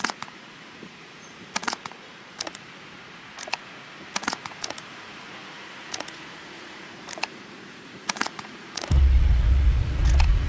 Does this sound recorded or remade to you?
remade